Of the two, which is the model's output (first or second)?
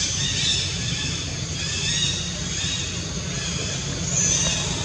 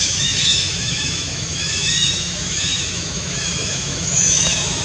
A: second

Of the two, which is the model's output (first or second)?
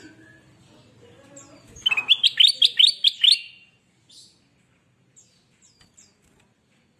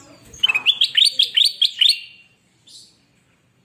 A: second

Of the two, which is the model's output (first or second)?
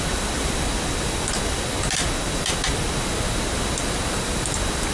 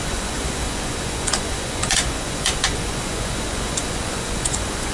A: second